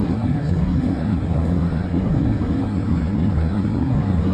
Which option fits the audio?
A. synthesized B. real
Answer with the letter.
A